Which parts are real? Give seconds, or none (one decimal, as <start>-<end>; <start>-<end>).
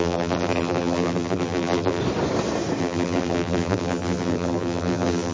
2.0-2.8